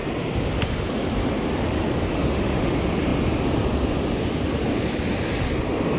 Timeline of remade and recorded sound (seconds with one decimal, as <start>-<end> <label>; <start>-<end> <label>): 0.0-2.1 recorded; 2.1-2.7 remade; 2.7-6.0 recorded